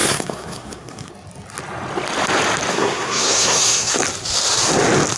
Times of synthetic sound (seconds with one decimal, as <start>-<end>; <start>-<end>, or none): 0.0-1.1; 2.7-3.9